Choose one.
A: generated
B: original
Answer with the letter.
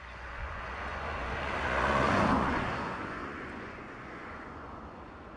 A